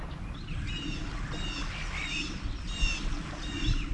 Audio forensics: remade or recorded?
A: recorded